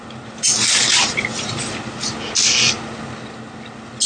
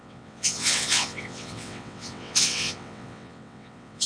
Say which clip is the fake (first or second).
second